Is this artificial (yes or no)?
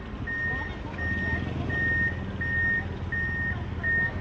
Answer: no